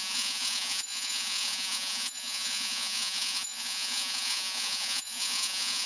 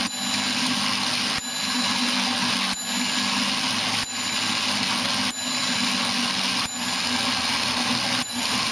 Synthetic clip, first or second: first